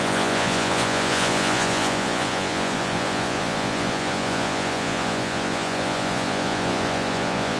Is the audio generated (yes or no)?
yes